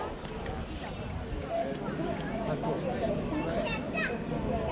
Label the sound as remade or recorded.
recorded